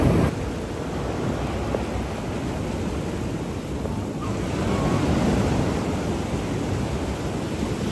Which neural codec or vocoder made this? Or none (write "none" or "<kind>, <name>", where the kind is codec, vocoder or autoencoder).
none